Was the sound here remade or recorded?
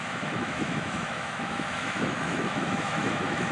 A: remade